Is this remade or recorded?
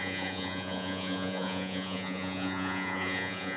remade